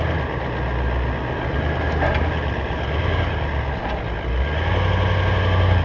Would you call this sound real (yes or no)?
yes